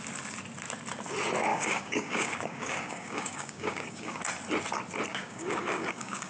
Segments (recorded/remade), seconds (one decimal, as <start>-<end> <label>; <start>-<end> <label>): 0.0-1.5 recorded; 1.5-4.2 remade; 4.2-5.1 recorded; 5.1-6.3 remade